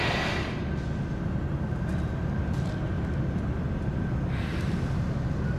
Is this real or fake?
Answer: real